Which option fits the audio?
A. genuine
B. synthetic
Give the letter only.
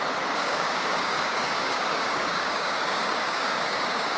B